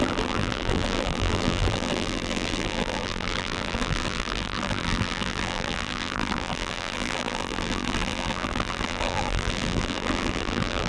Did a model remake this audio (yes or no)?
yes